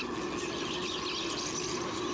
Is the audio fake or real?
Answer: real